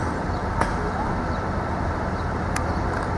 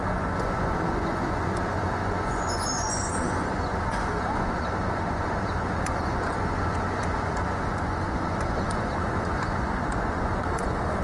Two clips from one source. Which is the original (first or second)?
first